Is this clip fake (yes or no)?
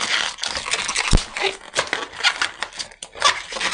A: no